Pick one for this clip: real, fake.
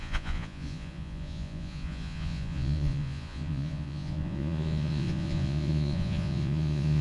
fake